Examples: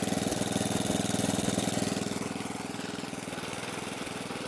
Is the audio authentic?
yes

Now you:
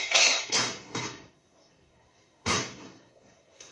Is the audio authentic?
no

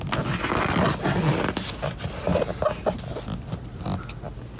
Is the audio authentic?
yes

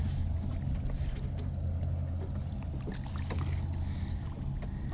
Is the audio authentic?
yes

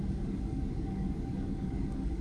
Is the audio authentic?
no